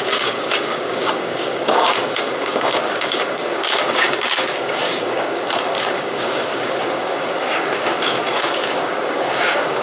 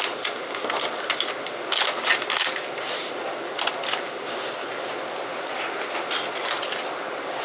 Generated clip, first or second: first